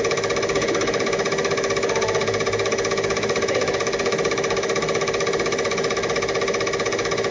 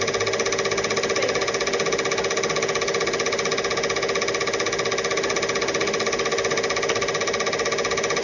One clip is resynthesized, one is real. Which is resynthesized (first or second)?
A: first